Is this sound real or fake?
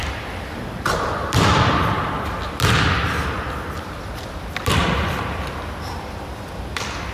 fake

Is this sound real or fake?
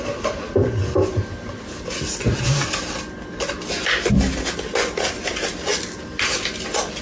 real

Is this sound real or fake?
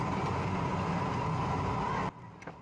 real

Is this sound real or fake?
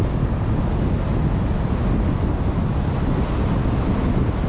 real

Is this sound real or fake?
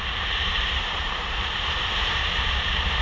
fake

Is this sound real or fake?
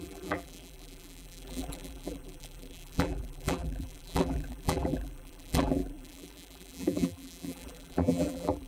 fake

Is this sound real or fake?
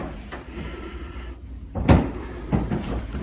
fake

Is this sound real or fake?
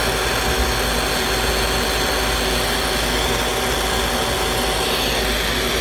real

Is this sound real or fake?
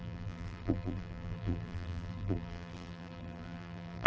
fake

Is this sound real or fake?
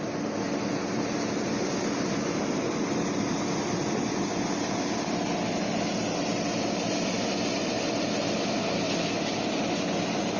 real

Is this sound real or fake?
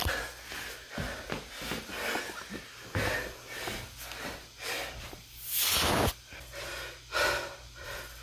real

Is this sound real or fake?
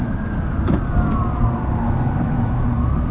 real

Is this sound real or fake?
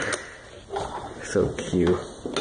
real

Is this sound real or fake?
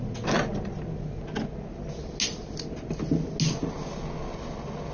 real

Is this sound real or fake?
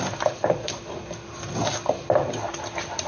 real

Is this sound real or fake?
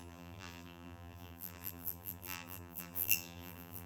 fake